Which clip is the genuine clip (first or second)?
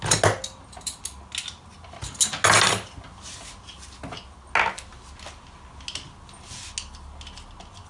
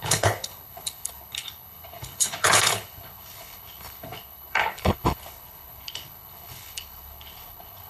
first